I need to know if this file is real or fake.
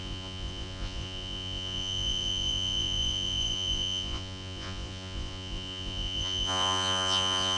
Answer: fake